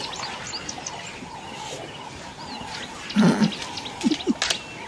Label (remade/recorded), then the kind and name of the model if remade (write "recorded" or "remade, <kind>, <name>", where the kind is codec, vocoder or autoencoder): recorded